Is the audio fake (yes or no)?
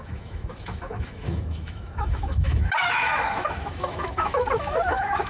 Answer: yes